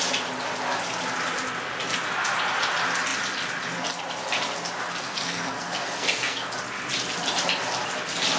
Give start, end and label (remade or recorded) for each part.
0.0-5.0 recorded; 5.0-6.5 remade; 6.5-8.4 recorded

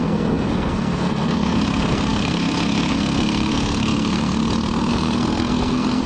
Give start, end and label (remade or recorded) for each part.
0.0-4.4 remade; 4.4-4.9 recorded; 4.9-6.1 remade

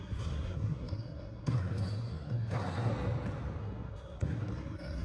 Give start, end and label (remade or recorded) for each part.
0.0-2.9 remade; 2.9-3.6 recorded; 3.6-5.0 remade

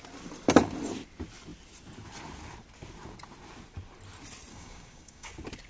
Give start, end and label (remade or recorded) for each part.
0.0-4.5 recorded; 4.5-5.3 remade; 5.3-5.7 recorded

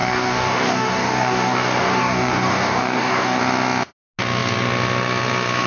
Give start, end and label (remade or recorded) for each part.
0.0-3.4 remade; 3.4-5.7 recorded

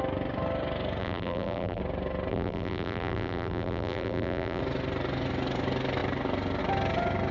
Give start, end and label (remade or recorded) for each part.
0.0-1.0 recorded; 1.0-1.8 remade; 1.8-2.3 recorded; 2.3-4.6 remade; 4.6-7.3 recorded

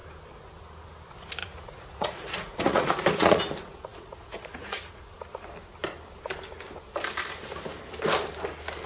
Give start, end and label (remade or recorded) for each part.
0.0-1.4 recorded; 1.4-3.4 remade; 3.4-3.9 recorded; 3.9-5.1 remade; 5.1-8.9 recorded